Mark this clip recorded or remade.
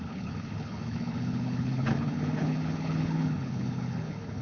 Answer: remade